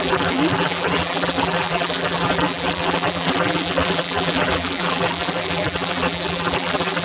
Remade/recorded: remade